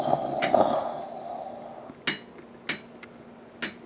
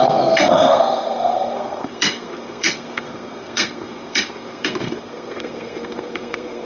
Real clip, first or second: first